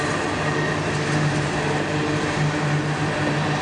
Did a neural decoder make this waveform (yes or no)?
no